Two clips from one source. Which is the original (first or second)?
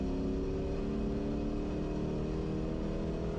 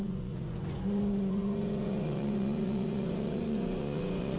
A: first